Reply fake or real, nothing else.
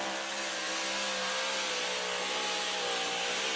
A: real